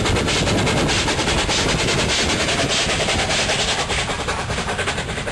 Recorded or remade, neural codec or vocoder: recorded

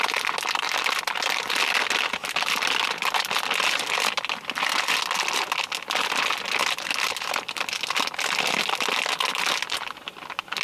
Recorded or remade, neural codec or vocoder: recorded